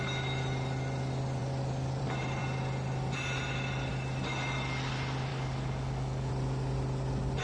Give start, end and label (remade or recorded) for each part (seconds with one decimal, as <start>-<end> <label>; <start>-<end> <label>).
0.0-5.3 recorded; 5.3-6.3 remade; 6.3-7.4 recorded